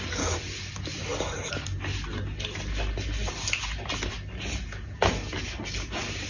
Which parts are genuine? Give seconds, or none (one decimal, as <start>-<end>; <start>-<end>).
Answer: 0.0-6.3

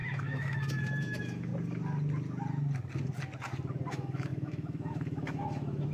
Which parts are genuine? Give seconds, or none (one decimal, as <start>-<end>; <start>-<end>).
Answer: 1.5-3.9

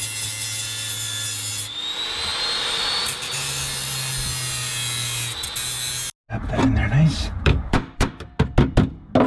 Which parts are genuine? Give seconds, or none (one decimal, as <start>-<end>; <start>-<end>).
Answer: 0.0-6.8; 8.1-9.3

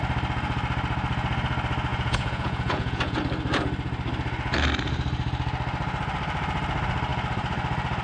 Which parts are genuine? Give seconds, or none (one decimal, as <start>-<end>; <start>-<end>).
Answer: 0.0-1.9; 3.2-8.0

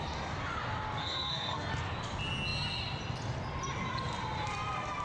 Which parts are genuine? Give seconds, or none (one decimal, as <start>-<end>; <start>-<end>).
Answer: 0.0-1.0; 1.7-5.0

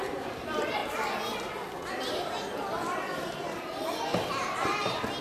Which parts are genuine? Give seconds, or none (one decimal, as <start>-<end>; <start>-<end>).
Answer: 0.8-1.9